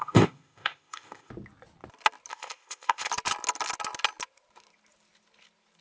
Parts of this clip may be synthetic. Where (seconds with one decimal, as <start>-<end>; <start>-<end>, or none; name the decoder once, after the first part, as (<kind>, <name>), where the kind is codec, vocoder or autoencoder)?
0.0-1.3 (codec, ZipCodec); 2.3-3.1